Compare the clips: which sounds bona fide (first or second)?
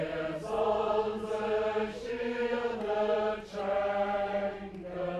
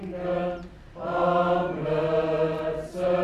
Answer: second